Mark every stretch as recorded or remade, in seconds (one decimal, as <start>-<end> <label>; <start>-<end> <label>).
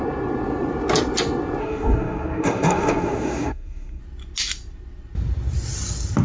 0.0-1.6 recorded; 1.6-4.0 remade; 4.0-6.2 recorded